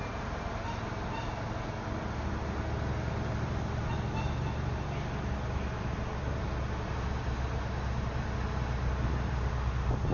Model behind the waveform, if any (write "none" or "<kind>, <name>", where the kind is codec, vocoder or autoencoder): none